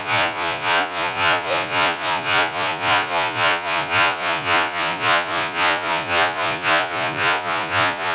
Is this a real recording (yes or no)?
no